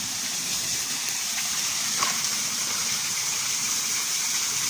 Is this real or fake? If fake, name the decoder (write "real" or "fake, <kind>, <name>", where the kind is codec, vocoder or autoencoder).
fake, vocoder, BigVGAN v2